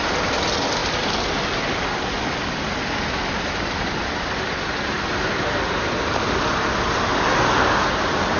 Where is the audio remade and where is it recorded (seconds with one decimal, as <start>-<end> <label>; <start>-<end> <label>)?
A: 0.0-8.4 recorded